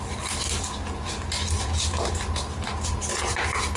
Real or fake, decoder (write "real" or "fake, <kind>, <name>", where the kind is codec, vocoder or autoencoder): real